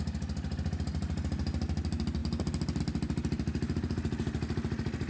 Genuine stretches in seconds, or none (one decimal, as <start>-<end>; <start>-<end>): 0.0-5.1